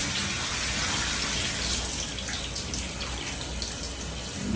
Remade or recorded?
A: recorded